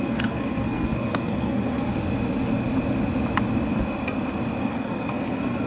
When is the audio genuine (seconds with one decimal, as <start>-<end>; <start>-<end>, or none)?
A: 1.9-4.6